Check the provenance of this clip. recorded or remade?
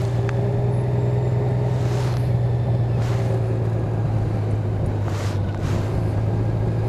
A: recorded